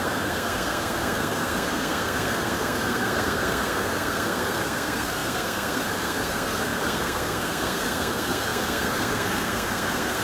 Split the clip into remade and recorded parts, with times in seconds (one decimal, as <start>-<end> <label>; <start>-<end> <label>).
0.0-10.2 remade